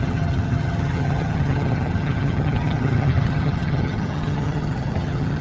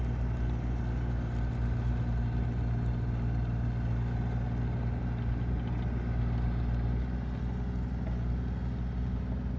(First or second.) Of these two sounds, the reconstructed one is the first